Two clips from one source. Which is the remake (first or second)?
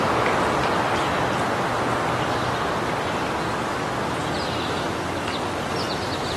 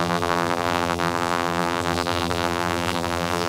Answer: second